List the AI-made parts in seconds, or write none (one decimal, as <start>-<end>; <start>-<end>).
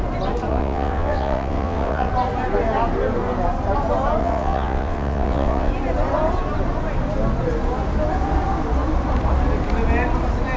0.5-2.1; 4.2-5.7